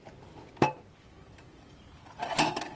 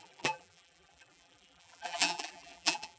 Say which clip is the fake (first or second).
second